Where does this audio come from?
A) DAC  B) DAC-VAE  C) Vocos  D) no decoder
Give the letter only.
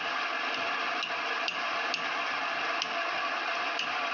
D